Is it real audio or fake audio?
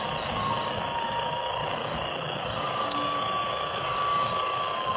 fake